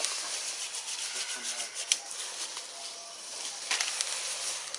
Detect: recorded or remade recorded